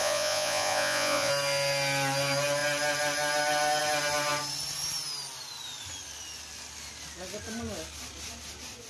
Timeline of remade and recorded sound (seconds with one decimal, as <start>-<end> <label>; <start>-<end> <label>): 0.0-1.3 remade; 1.3-8.9 recorded

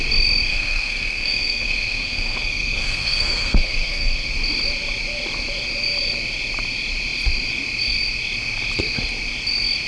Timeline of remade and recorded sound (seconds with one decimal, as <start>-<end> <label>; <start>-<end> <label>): 0.0-0.5 recorded; 0.5-4.3 remade; 4.3-9.9 recorded

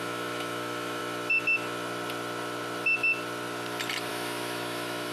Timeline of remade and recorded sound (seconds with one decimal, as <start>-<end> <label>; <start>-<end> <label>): 0.0-1.0 remade; 1.0-4.1 recorded; 4.1-5.1 remade